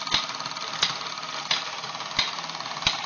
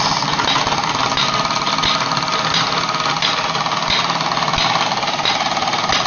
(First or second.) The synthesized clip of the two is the first